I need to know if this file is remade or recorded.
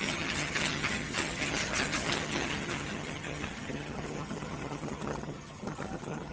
remade